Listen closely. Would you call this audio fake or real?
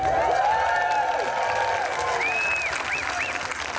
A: real